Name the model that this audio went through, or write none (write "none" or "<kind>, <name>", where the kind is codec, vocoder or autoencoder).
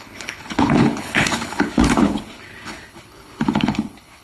codec, HILCodec